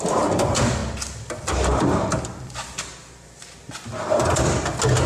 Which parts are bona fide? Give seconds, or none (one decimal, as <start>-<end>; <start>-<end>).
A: 0.8-1.9; 2.9-5.1